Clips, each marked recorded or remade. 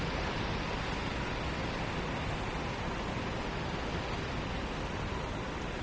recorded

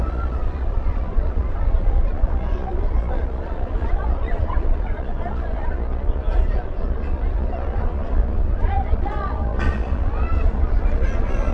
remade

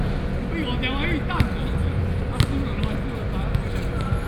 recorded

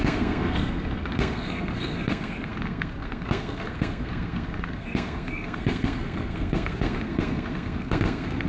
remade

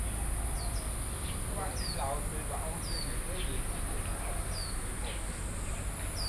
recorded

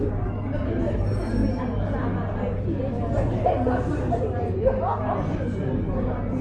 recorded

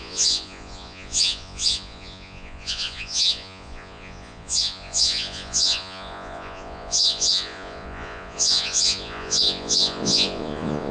remade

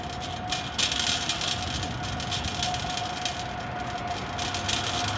recorded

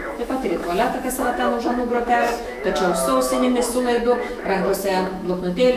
remade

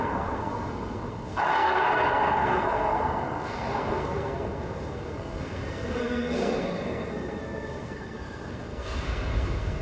remade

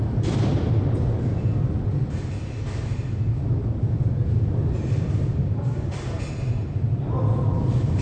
recorded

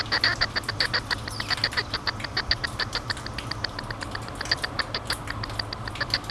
recorded